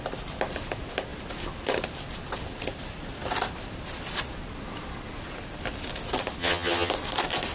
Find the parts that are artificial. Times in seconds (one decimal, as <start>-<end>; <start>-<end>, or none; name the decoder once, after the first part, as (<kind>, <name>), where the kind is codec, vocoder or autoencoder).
6.4-6.9 (vocoder, HiFi-GAN)

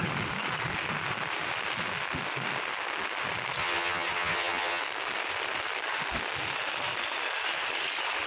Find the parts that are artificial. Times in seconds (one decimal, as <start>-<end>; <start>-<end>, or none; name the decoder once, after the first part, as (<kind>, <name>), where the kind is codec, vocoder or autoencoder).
3.6-4.8 (vocoder, HiFi-GAN)

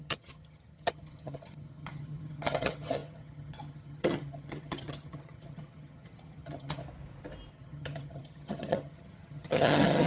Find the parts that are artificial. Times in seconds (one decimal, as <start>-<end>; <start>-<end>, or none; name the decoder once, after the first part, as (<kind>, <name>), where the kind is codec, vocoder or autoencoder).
0.0-6.8 (vocoder, HiFi-GAN); 7.5-10.1

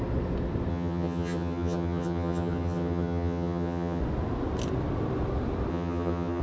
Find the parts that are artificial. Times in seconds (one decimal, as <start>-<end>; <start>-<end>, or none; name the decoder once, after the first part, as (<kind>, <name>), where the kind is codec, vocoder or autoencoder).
0.7-4.0 (vocoder, HiFi-GAN); 5.7-6.4

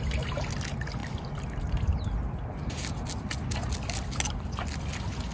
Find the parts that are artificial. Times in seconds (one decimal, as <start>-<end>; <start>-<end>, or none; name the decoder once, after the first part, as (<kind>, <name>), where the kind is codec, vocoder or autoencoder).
none

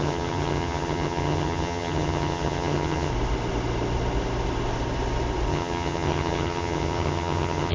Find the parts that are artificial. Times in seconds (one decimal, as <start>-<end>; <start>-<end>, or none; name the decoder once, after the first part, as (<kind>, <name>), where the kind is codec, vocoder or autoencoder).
0.0-3.1 (vocoder, HiFi-GAN); 5.5-7.7

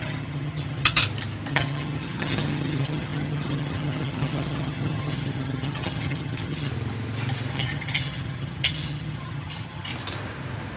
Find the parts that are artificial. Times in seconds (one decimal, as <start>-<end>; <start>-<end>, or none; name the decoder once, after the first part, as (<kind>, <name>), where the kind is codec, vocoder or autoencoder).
0.0-1.0 (vocoder, HiFi-GAN); 1.5-6.7; 7.5-9.9

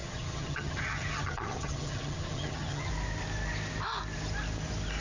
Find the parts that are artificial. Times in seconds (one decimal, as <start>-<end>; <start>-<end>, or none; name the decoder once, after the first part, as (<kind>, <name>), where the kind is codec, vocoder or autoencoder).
0.0-2.9 (vocoder, HiFi-GAN)